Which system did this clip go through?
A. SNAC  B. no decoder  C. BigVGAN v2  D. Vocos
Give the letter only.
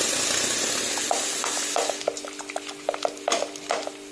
B